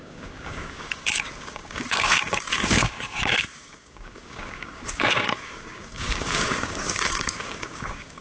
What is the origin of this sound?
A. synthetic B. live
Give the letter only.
A